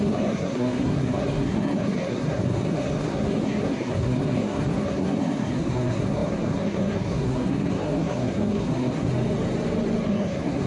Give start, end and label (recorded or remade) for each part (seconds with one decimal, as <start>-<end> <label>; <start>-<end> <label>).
0.0-9.1 remade; 9.1-10.1 recorded; 10.1-10.7 remade